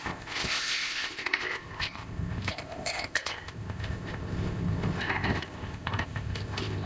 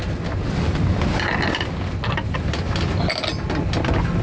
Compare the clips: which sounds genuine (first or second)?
second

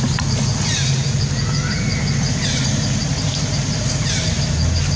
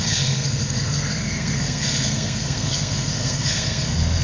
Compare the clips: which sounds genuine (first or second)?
first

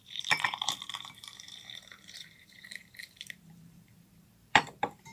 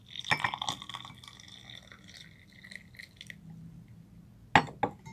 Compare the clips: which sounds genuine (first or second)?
second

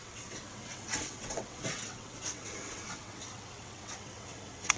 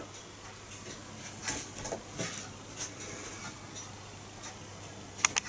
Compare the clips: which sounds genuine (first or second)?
second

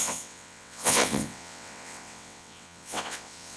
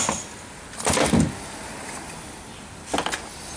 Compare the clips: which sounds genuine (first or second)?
second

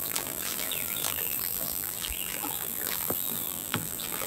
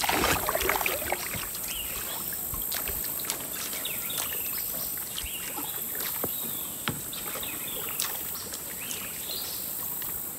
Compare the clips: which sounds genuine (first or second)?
second